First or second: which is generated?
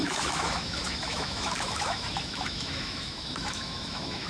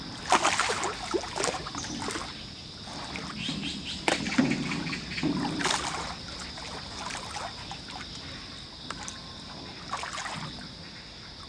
first